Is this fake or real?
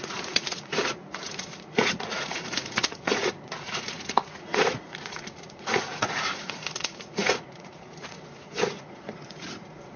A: fake